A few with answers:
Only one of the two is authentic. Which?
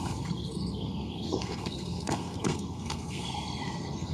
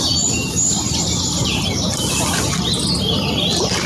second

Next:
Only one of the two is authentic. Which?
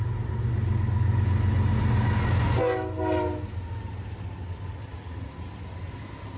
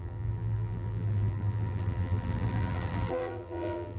first